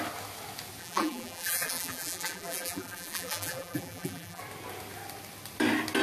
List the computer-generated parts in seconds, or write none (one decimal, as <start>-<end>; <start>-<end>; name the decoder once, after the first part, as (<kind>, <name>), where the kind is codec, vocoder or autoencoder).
0.8-4.4 (vocoder, BigVGAN v2)